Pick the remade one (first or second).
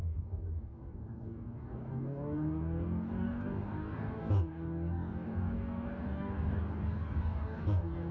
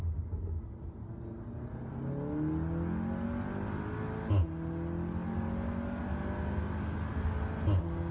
first